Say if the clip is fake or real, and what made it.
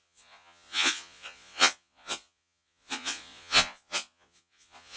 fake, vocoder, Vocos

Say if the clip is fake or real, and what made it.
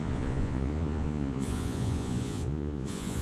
fake, vocoder, Vocos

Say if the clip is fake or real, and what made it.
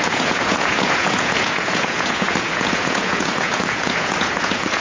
fake, vocoder, Vocos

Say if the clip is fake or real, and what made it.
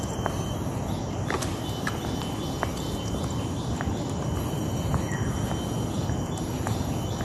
real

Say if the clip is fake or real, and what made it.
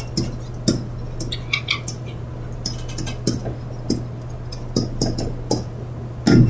real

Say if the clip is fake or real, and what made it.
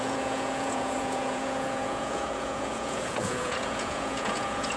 fake, vocoder, Vocos